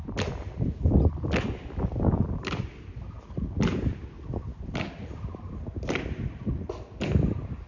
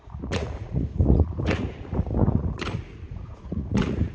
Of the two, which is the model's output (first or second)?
second